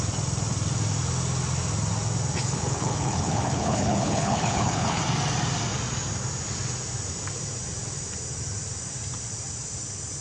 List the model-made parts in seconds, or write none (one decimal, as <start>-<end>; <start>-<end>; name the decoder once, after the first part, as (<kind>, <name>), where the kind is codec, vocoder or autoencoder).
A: 2.4-5.0 (codec, HILCodec)